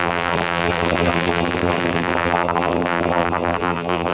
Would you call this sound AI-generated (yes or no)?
yes